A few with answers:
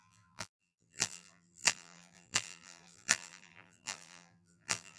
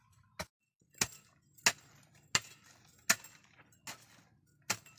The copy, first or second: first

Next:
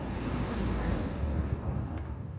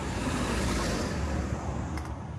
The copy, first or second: first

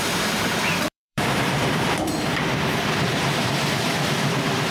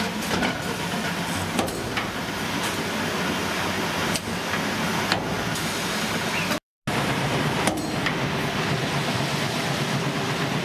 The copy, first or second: first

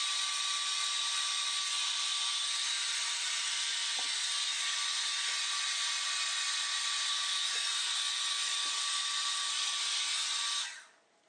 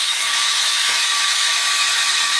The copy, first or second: second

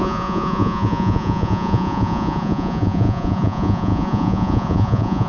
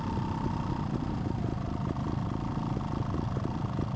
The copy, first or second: first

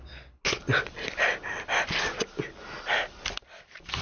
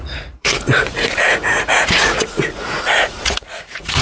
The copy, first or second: second